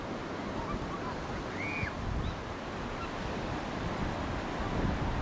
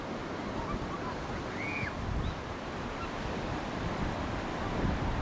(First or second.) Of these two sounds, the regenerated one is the second